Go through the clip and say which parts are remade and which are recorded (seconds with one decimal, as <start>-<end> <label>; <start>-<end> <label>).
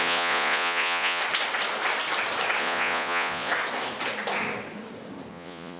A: 0.0-1.2 remade; 1.2-2.6 recorded; 2.6-3.5 remade; 3.5-5.3 recorded; 5.3-5.8 remade